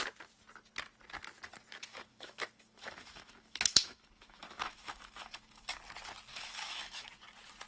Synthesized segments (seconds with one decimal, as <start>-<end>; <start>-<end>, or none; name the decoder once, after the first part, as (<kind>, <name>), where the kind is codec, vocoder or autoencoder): 1.9-5.8 (autoencoder, DAC-VAE); 6.3-7.1